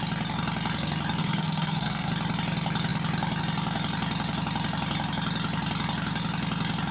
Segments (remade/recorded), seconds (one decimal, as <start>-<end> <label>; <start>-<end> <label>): 0.0-1.2 recorded; 1.2-2.1 remade; 2.1-6.9 recorded